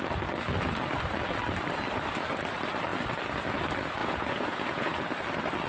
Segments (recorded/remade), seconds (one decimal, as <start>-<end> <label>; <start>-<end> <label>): 0.0-4.0 recorded; 4.0-5.0 remade; 5.0-5.7 recorded